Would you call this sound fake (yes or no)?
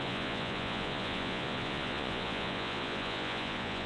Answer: yes